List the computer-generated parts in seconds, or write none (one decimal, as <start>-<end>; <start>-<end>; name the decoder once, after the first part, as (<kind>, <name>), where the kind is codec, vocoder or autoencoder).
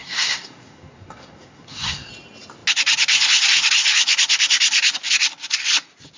0.0-2.1 (codec, SNAC)